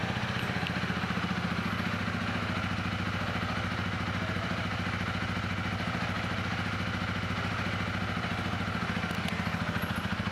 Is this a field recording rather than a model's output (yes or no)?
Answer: yes